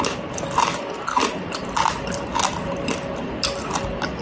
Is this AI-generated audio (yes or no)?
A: no